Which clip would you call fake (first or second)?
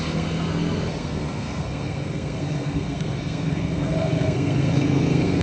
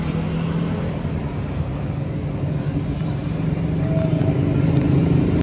first